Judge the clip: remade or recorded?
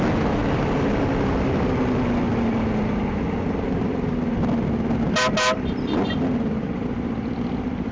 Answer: recorded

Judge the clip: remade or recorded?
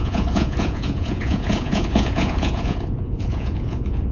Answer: remade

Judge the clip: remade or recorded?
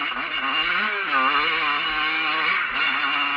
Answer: recorded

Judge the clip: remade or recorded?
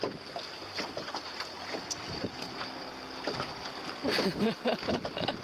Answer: recorded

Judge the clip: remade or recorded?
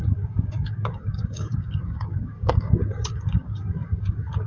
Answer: remade